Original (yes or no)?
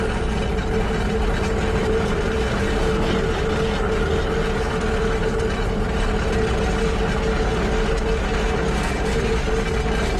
yes